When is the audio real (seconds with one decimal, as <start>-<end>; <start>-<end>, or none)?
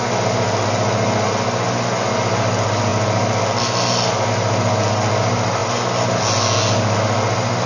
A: 0.0-7.7